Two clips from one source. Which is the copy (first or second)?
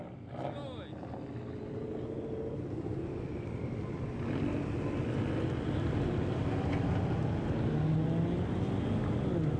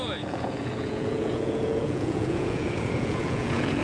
second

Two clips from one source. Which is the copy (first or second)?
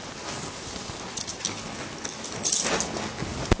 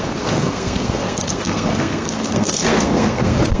second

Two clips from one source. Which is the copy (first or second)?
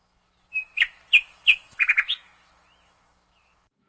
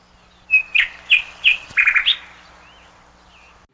first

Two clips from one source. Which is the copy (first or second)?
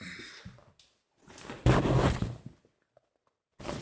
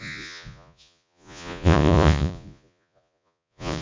second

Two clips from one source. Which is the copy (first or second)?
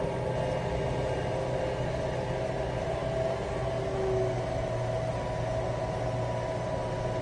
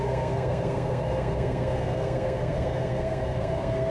second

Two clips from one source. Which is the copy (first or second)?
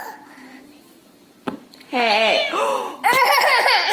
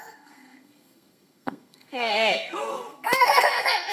second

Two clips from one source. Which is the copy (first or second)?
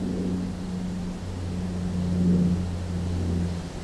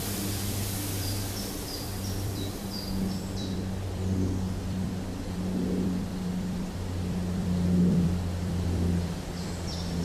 second